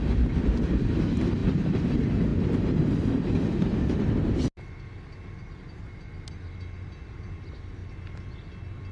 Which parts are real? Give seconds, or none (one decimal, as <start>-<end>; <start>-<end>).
0.0-1.4; 1.9-8.9